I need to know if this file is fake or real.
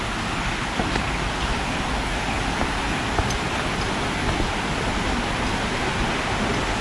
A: real